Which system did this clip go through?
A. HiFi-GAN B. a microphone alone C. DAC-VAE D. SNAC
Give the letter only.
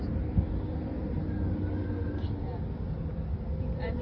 B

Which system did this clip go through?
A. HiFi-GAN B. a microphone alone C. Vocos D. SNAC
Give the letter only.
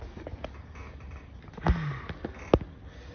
B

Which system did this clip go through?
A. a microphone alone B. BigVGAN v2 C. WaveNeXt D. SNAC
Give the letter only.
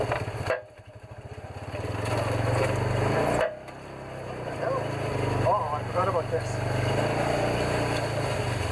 A